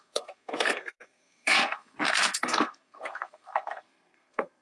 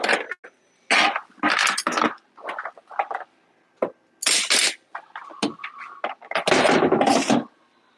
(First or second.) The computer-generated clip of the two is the first